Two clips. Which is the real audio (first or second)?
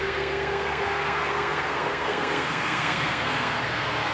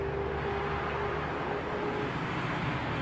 second